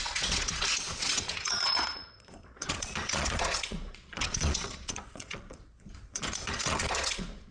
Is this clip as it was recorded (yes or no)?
no